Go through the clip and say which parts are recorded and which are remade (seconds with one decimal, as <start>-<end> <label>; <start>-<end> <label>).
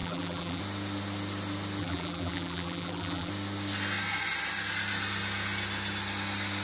0.0-0.6 remade; 0.6-1.8 recorded; 1.8-3.3 remade; 3.3-6.6 recorded